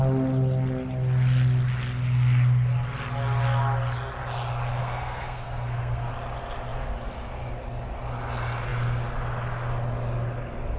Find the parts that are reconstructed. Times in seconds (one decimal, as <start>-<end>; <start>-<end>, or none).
4.8-6.1